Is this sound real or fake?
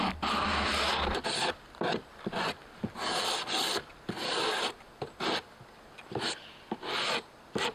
real